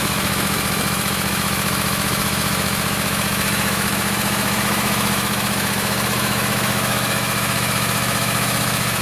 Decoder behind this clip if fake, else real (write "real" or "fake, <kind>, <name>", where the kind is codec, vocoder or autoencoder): fake, autoencoder, DAC-VAE